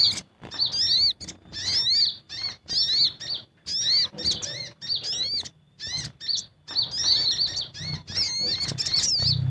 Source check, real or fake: real